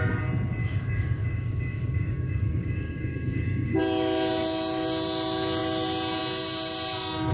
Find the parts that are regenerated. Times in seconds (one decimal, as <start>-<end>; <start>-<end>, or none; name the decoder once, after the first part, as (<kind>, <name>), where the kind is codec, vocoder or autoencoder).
0.6-3.8 (codec, DAC)